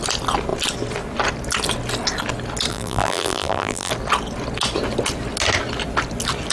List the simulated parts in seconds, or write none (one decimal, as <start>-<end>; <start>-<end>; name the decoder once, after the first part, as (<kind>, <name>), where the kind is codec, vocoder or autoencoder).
2.7-3.9 (vocoder, BigVGAN v2)